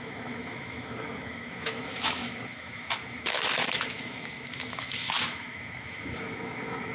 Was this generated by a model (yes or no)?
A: yes